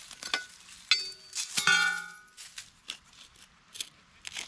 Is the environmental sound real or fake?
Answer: real